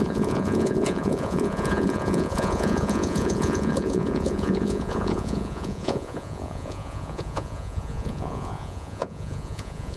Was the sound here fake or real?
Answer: fake